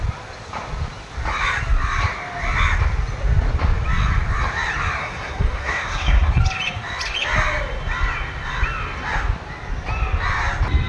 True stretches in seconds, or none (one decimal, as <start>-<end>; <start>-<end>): 0.0-5.0; 6.4-10.9